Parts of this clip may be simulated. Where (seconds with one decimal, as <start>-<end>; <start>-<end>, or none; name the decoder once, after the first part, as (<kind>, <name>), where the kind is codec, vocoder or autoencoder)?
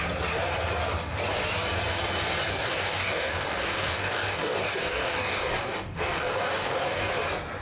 2.5-7.1 (codec, DAC)